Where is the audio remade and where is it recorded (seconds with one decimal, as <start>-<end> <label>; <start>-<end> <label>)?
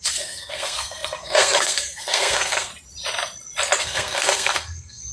0.0-2.7 remade; 2.7-3.8 recorded; 3.8-5.1 remade